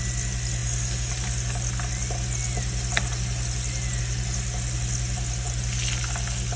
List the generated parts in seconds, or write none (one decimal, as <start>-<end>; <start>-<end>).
none